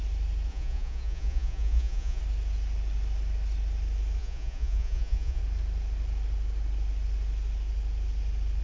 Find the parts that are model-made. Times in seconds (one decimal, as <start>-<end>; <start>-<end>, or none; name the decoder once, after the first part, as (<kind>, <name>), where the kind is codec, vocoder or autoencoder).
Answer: 0.5-2.2 (vocoder, Vocos); 4.2-5.4